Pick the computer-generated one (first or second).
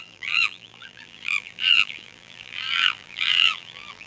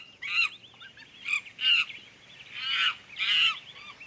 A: first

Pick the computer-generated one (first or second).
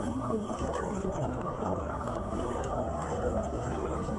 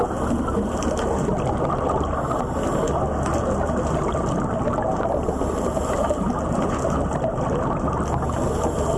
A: first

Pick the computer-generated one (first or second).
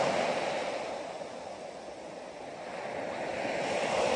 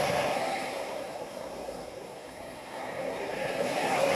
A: second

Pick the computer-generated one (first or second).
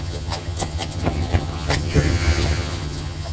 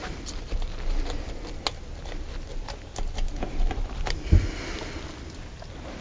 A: first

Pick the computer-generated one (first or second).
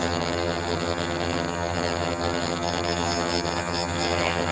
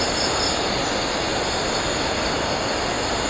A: first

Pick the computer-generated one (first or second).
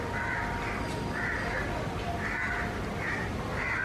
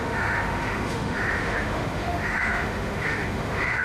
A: second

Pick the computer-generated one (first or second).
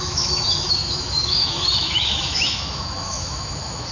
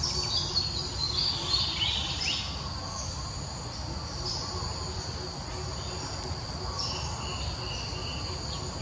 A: first